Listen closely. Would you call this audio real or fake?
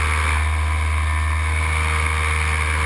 real